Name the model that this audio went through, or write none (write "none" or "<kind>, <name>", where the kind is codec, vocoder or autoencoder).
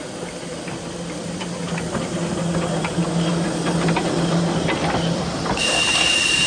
none